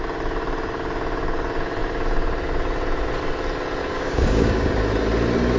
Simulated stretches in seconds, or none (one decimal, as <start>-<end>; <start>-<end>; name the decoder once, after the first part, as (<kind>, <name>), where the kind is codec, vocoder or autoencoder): 3.8-4.8 (codec, DAC)